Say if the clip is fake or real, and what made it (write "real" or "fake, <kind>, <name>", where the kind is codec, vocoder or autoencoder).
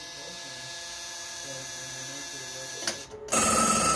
real